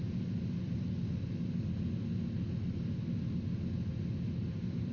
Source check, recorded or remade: recorded